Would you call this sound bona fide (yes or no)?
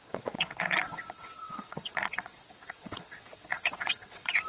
no